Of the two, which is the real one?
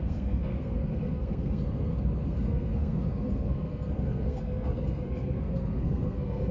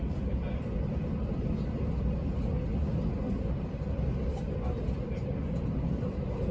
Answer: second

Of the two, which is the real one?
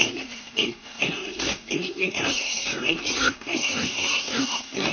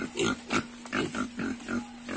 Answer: second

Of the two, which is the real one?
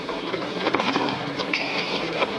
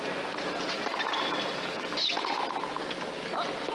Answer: second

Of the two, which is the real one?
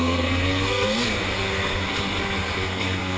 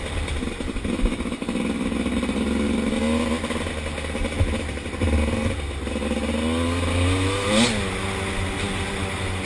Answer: second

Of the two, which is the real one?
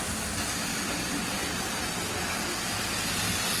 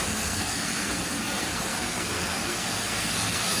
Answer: first